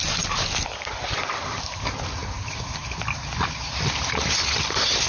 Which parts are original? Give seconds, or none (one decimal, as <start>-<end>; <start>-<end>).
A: 0.0-5.1